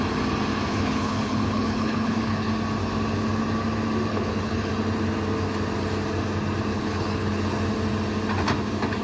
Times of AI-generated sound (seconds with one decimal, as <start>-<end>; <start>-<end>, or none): 0.7-2.5; 4.1-4.7; 6.7-7.4